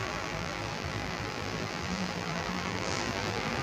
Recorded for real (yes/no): no